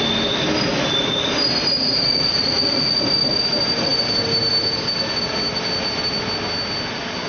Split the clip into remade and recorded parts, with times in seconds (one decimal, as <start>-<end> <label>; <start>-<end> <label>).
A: 0.0-2.0 recorded; 2.0-3.0 remade; 3.0-7.3 recorded